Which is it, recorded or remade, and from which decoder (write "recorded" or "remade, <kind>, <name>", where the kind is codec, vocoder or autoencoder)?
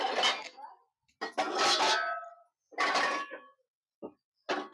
recorded